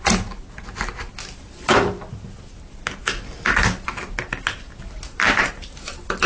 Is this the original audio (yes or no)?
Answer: yes